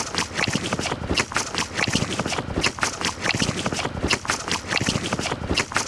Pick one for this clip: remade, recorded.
remade